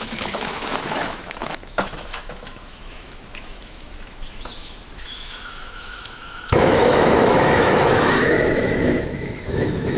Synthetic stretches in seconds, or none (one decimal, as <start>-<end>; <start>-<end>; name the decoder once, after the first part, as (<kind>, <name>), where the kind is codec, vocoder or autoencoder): 0.0-10.0 (autoencoder, DAC-VAE)